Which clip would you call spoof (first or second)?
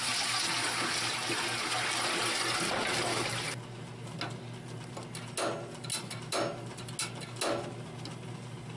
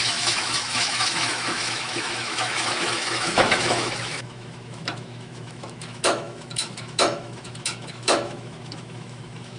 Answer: second